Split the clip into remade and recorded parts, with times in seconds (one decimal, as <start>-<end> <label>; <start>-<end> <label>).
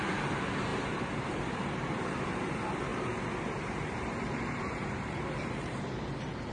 0.0-0.7 recorded; 0.7-2.5 remade; 2.5-2.9 recorded; 2.9-6.5 remade